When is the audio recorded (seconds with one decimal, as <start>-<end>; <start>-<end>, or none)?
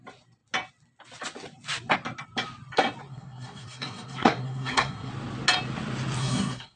0.0-3.1; 5.1-6.2